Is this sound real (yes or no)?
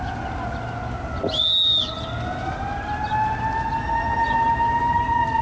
yes